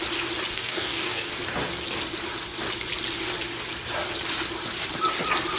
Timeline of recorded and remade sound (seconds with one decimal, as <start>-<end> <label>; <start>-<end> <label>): 0.0-0.5 recorded; 0.5-1.3 remade; 1.3-5.6 recorded